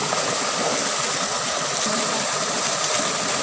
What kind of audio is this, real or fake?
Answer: real